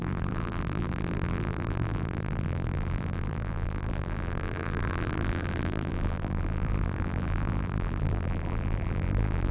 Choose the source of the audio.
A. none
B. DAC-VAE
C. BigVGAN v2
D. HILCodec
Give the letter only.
C